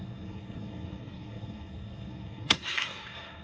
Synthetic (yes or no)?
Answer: yes